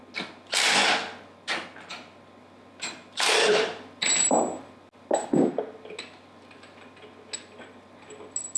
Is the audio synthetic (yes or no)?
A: no